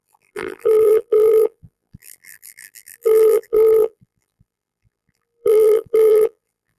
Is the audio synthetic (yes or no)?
yes